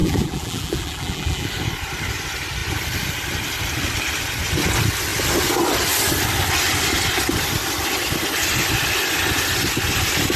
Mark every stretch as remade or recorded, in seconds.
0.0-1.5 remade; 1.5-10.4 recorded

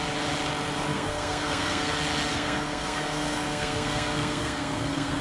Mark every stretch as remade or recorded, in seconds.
0.0-0.9 recorded; 0.9-1.9 remade; 1.9-2.3 recorded; 2.3-5.2 remade

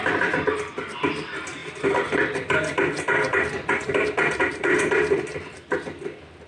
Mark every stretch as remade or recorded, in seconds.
0.0-1.6 recorded; 1.6-5.4 remade; 5.4-6.5 recorded

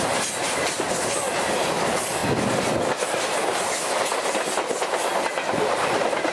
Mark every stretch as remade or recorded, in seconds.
0.0-6.3 recorded

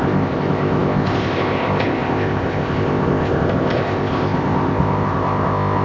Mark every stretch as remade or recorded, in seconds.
0.0-5.8 remade

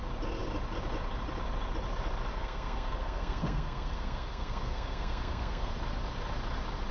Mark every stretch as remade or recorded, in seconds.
0.0-2.3 recorded; 2.3-5.7 remade; 5.7-6.9 recorded